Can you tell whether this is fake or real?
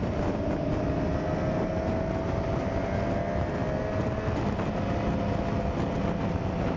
real